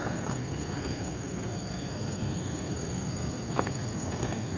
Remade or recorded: remade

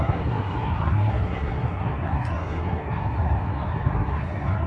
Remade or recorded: remade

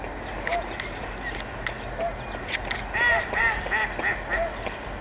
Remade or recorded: recorded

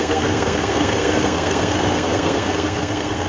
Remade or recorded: remade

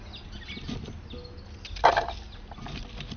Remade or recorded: recorded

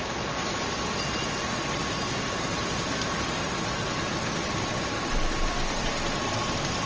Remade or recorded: recorded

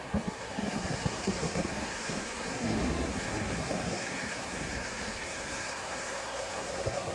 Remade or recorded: remade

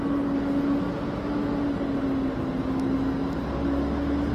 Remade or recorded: recorded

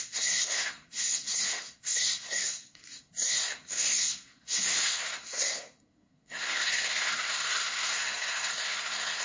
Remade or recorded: remade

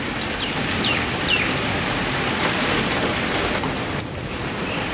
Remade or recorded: recorded